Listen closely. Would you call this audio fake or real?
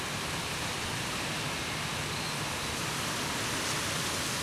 real